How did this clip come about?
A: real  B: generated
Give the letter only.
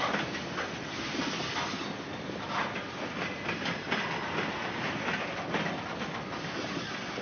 A